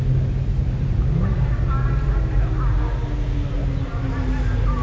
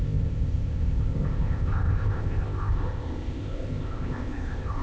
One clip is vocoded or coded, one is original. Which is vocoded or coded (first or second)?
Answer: second